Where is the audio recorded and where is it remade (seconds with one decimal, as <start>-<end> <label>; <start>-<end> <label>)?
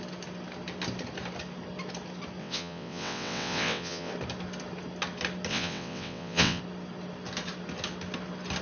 0.0-2.4 recorded; 2.4-4.1 remade; 4.1-5.5 recorded; 5.5-6.6 remade; 6.6-8.6 recorded